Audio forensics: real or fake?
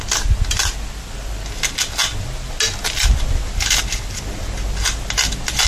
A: real